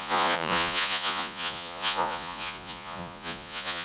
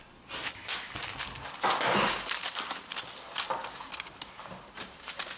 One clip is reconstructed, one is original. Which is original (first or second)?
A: second